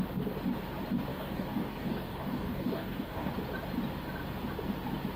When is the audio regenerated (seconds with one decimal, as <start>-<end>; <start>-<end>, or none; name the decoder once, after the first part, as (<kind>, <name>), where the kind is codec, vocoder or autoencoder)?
1.1-3.3 (codec, DAC)